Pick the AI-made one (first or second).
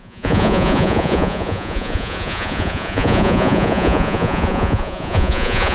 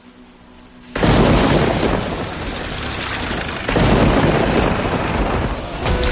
first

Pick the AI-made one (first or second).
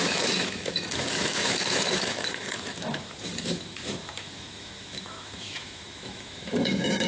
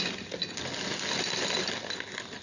first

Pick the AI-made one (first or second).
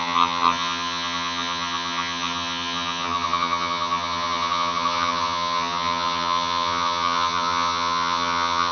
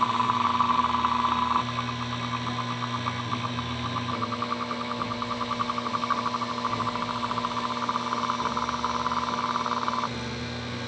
first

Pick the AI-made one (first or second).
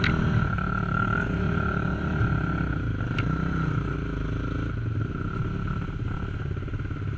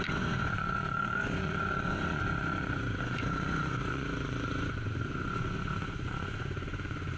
second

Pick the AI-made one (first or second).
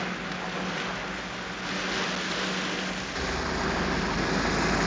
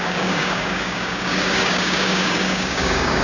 second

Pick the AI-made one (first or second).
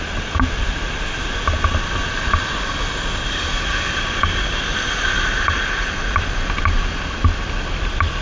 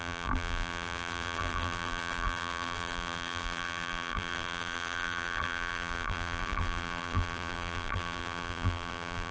second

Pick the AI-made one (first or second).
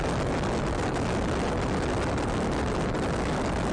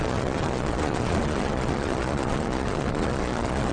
second